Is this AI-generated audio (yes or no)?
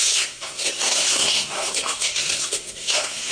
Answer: yes